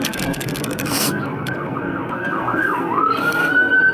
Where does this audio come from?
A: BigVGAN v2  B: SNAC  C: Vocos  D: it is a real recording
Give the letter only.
B